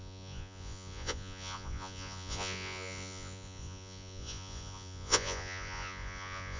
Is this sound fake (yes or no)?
yes